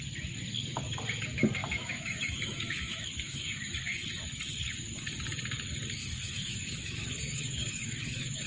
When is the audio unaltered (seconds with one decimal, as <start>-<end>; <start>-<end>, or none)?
0.0-1.6; 3.7-6.0